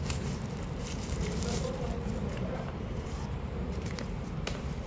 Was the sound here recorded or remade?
remade